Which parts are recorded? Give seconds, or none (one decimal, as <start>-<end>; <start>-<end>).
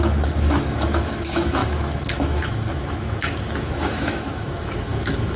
none